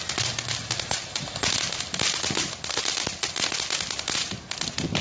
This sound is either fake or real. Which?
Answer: real